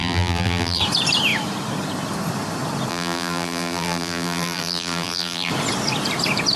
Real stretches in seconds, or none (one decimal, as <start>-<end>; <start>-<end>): 0.8-2.9; 5.5-6.6